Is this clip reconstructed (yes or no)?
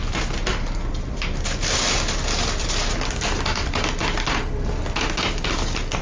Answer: no